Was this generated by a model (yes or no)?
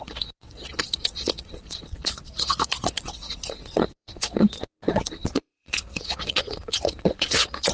yes